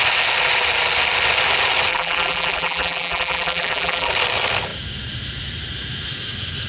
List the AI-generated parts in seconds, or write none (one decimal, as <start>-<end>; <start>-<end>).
1.9-4.1